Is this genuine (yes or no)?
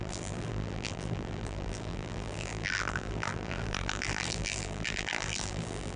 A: no